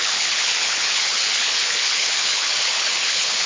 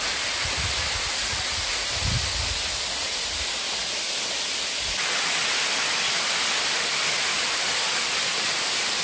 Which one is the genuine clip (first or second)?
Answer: second